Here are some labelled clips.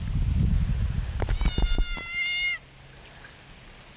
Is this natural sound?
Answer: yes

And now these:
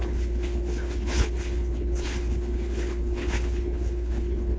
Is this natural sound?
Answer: no